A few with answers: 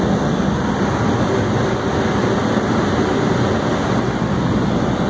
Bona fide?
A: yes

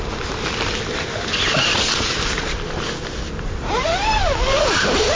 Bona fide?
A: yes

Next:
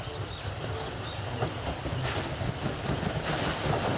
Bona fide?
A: yes